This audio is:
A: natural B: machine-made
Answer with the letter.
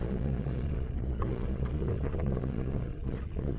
B